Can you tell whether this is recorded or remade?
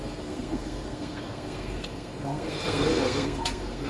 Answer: remade